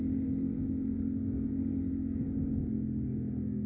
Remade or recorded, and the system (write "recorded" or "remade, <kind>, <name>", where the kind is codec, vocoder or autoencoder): remade, codec, SNAC